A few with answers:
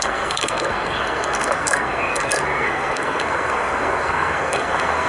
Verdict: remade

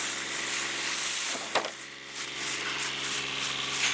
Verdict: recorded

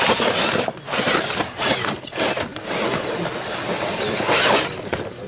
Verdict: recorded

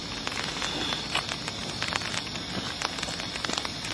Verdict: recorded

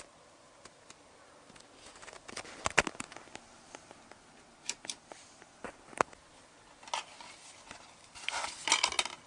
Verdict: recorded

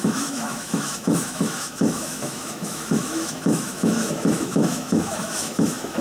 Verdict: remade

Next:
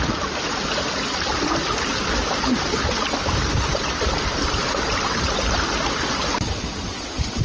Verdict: recorded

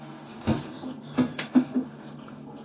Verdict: remade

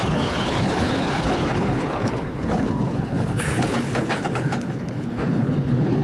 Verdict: remade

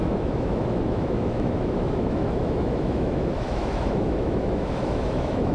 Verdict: remade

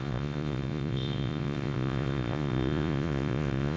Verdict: remade